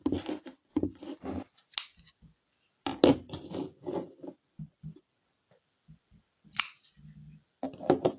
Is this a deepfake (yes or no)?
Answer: no